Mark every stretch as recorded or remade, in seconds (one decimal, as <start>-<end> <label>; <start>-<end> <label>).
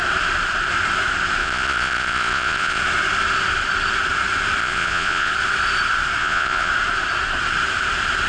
0.0-1.4 recorded; 1.4-2.8 remade; 2.8-4.6 recorded; 4.6-5.3 remade; 5.3-6.2 recorded; 6.2-6.7 remade; 6.7-8.3 recorded